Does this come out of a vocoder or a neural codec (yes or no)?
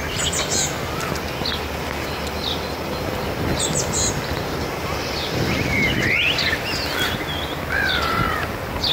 no